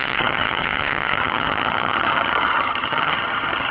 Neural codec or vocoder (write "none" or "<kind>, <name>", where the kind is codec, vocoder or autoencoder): vocoder, HiFi-GAN